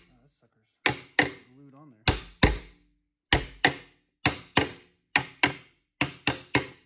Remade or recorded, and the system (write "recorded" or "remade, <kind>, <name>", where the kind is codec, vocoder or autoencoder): recorded